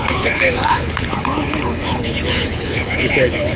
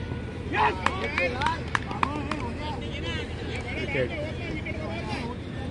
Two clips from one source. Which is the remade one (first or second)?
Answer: first